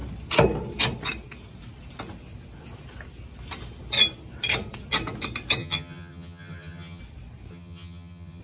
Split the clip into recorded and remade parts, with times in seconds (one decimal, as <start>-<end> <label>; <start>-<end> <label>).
0.0-5.6 recorded; 5.6-7.0 remade; 7.0-7.5 recorded; 7.5-8.4 remade